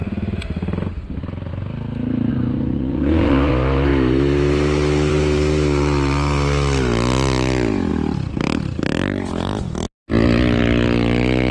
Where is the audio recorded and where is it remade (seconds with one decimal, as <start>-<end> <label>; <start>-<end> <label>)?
0.0-2.3 recorded; 2.3-3.5 remade; 3.5-11.5 recorded